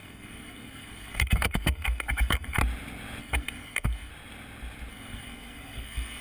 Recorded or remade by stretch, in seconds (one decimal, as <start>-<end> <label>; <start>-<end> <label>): 0.0-2.6 remade; 2.6-3.2 recorded; 3.2-4.1 remade; 4.1-4.9 recorded; 4.9-6.2 remade